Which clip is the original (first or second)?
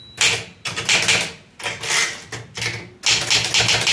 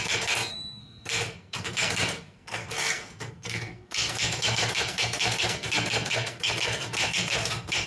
first